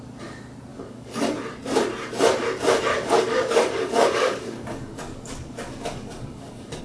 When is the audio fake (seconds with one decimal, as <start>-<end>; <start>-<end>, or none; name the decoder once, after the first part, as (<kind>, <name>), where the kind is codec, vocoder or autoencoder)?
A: 0.7-1.4 (codec, DAC); 2.9-6.8